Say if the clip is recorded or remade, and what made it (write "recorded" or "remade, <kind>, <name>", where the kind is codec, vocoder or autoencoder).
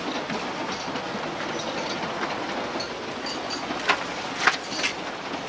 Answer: recorded